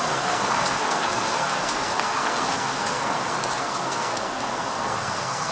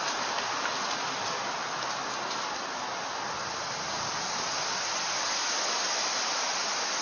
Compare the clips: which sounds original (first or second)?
second